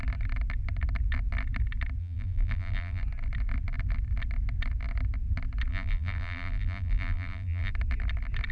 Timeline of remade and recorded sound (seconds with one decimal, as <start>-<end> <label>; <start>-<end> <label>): 0.0-2.0 recorded; 2.0-3.0 remade; 3.0-5.7 recorded; 5.7-7.7 remade; 7.7-8.5 recorded